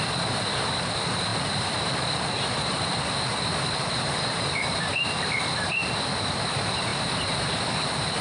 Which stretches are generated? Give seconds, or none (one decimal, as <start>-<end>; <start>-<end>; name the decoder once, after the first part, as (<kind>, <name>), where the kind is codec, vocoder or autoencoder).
0.0-5.8 (vocoder, BigVGAN v2); 6.5-8.2